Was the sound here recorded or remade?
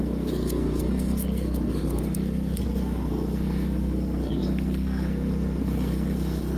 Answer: remade